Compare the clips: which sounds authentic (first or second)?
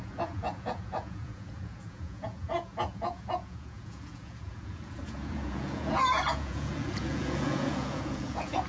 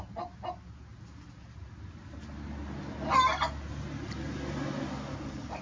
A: second